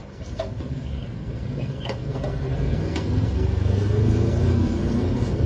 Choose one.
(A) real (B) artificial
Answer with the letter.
B